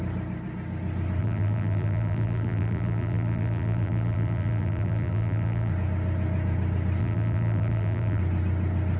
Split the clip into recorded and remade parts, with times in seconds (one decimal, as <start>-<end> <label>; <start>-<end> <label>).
0.0-1.2 recorded; 1.2-5.7 remade; 5.7-7.0 recorded; 7.0-8.2 remade; 8.2-9.0 recorded